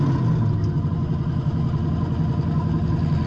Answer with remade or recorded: recorded